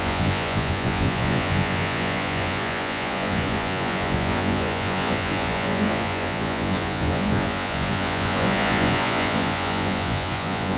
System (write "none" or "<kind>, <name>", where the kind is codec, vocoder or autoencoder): vocoder, Vocos